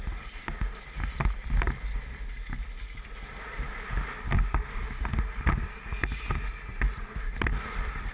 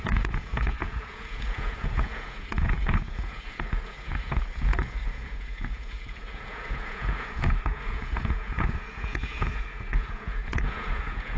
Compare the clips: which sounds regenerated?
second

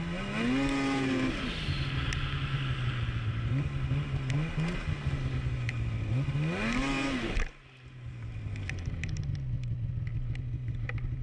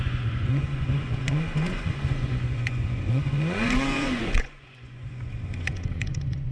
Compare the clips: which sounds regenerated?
second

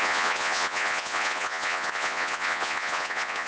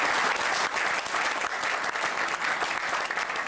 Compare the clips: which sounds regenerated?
first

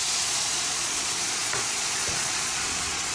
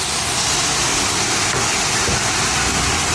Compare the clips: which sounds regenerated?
first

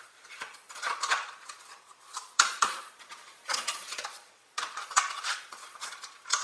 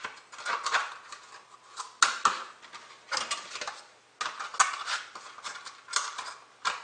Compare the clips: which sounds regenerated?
first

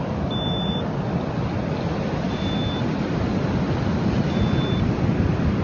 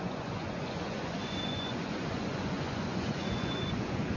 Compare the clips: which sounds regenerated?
second